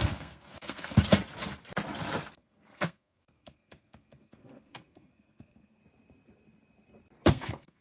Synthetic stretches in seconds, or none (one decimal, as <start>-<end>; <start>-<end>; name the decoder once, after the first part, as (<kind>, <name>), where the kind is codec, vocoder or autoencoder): 0.0-0.9 (codec, SNAC); 2.3-5.8; 7.3-7.8